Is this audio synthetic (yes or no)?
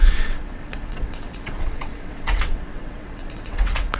yes